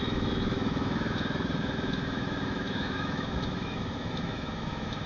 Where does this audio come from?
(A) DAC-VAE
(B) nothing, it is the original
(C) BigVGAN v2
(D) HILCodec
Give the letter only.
A